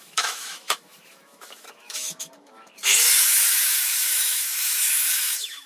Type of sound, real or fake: fake